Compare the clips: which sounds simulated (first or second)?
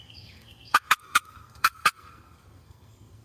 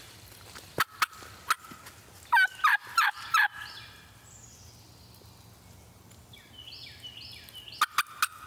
first